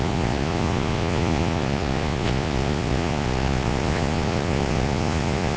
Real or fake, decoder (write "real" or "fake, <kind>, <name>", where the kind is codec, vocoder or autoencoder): fake, vocoder, Vocos